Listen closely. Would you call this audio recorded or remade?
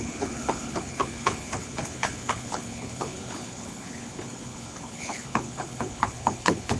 remade